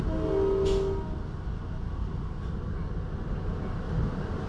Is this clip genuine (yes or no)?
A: yes